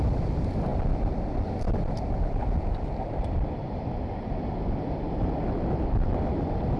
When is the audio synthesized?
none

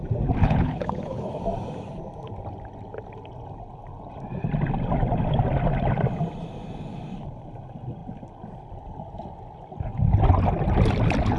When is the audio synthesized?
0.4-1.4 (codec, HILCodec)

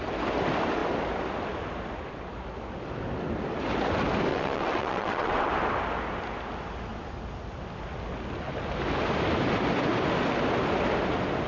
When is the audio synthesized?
4.3-5.5 (vocoder, WaveNeXt)